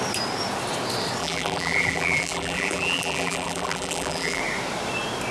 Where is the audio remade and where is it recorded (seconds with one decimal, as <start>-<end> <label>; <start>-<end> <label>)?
0.0-1.2 recorded; 1.2-4.4 remade; 4.4-5.3 recorded